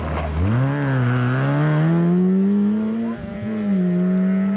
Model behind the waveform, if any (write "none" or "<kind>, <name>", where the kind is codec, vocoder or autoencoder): none